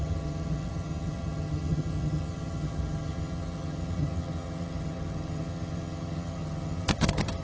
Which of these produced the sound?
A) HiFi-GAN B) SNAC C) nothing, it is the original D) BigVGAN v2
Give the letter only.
A